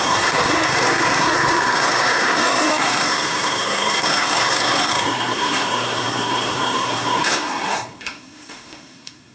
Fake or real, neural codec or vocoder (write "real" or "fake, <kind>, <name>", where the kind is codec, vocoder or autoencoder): fake, codec, SNAC